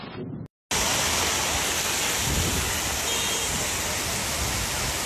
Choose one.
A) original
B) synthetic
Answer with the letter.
A